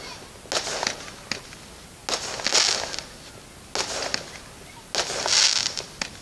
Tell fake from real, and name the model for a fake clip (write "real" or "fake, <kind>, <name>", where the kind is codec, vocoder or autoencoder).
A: real